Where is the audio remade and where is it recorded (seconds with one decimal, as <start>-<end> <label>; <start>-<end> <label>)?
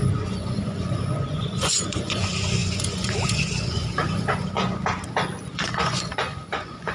0.0-4.8 remade; 4.8-5.4 recorded; 5.4-6.9 remade